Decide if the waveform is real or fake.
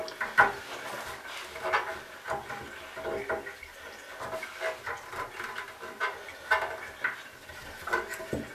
real